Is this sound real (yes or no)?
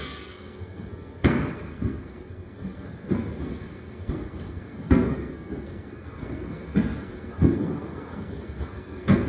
no